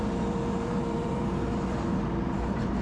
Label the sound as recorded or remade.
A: remade